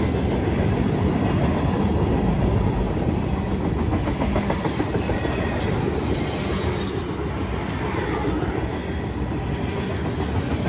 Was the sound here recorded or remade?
recorded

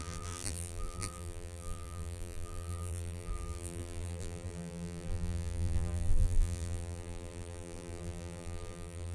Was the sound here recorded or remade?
remade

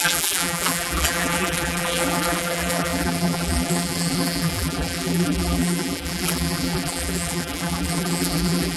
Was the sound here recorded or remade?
remade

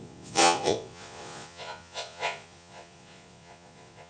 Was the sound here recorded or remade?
remade